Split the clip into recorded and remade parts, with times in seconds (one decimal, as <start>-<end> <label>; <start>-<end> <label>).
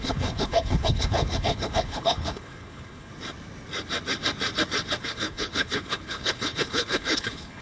0.0-3.1 remade; 3.1-5.0 recorded; 5.0-7.6 remade